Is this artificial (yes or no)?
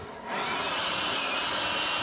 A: no